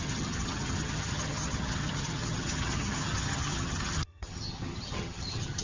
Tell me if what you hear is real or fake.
fake